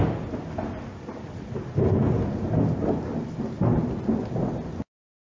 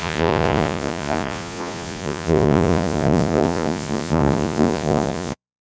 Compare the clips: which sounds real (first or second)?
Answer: first